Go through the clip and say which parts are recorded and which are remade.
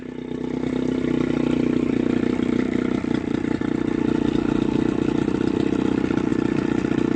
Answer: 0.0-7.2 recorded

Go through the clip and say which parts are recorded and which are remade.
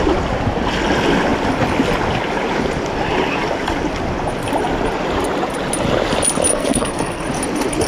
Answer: 0.0-6.5 recorded; 6.5-7.2 remade; 7.2-7.9 recorded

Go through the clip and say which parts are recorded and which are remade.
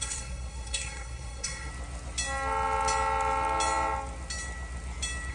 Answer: 0.0-1.7 remade; 1.7-5.3 recorded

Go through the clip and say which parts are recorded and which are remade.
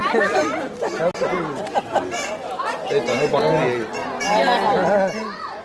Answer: 0.0-5.6 recorded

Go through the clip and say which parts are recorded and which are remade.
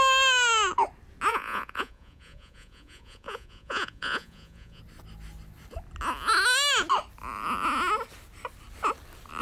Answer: 0.0-1.3 recorded; 1.3-4.8 remade; 4.8-9.4 recorded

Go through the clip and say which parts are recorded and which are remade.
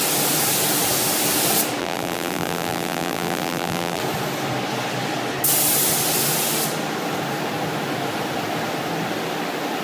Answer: 0.0-1.8 recorded; 1.8-4.0 remade; 4.0-9.8 recorded